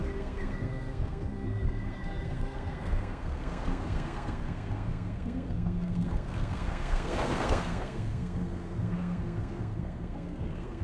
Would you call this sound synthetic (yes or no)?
yes